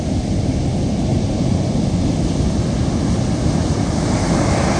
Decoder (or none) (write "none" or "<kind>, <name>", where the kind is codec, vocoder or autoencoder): none